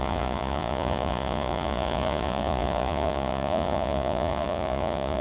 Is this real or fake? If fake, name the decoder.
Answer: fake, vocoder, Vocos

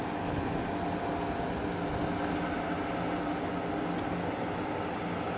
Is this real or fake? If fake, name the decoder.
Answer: real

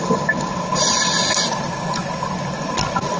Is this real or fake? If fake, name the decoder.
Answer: real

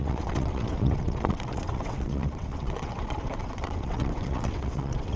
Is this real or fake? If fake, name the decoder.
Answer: fake, vocoder, WaveNeXt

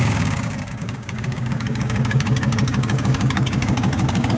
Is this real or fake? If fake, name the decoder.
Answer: fake, codec, DAC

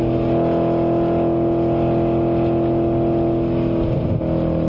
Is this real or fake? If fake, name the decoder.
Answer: real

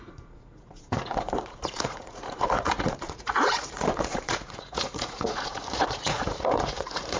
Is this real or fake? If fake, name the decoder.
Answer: fake, vocoder, Vocos